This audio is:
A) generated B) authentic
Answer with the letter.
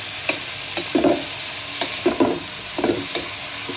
B